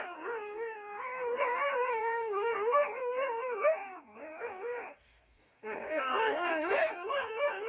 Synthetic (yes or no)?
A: yes